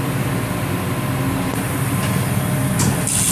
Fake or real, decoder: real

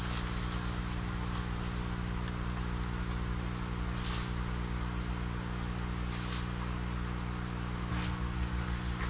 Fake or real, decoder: real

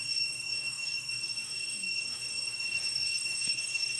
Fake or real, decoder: fake, codec, DAC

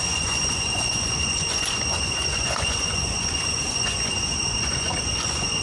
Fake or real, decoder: fake, vocoder, Vocos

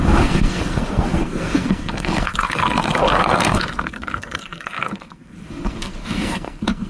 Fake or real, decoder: fake, codec, SNAC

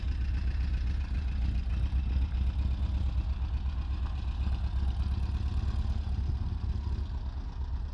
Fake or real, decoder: real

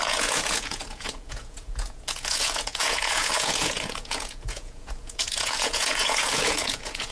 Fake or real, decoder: fake, vocoder, Vocos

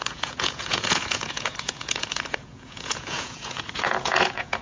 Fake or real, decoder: fake, vocoder, Vocos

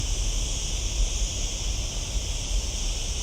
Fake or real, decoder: real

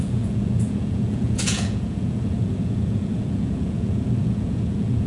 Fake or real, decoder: fake, vocoder, Vocos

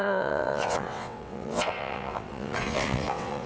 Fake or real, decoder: fake, vocoder, WaveNeXt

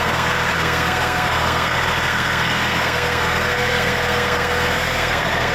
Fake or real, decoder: fake, codec, SNAC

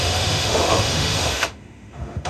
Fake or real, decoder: fake, autoencoder, DAC-VAE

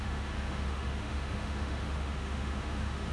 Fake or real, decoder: fake, autoencoder, DAC-VAE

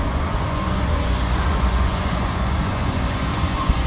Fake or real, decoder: fake, vocoder, Vocos